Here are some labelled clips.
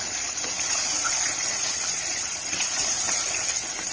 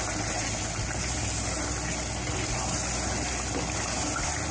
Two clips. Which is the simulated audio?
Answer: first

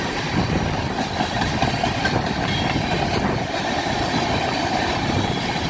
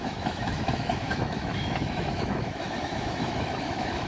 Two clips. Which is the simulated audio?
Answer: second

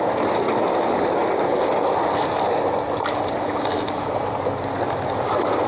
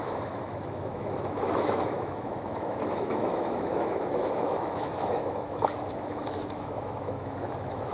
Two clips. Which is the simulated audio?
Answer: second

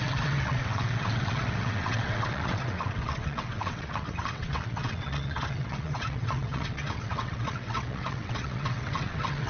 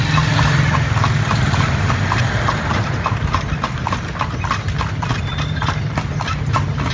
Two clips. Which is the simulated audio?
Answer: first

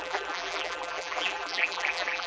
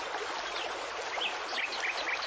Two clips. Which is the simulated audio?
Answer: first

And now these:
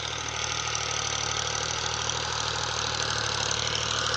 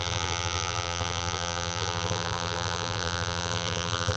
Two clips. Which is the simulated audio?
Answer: second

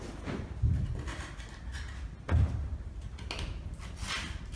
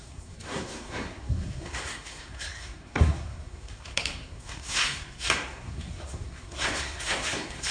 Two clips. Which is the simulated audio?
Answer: second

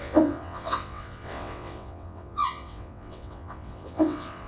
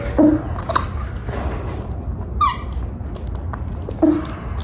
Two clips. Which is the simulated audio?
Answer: first